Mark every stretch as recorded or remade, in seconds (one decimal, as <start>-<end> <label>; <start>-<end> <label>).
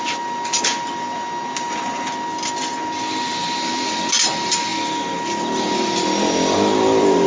0.0-7.3 recorded